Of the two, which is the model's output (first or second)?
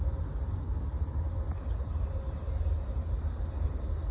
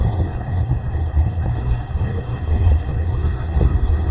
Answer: second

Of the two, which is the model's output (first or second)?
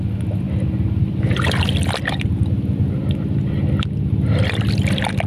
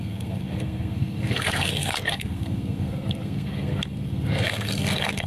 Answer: second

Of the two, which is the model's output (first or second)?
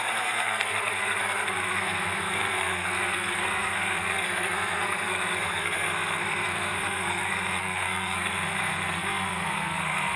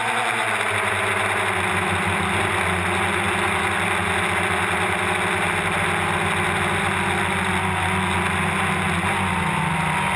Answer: first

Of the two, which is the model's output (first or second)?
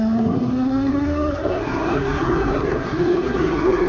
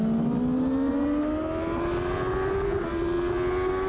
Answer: first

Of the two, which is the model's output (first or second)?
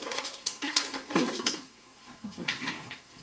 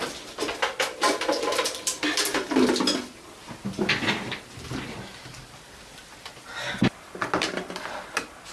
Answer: first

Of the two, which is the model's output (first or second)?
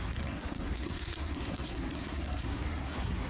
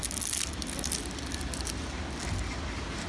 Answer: first